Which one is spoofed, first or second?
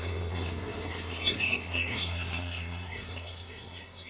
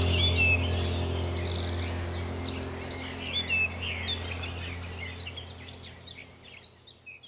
first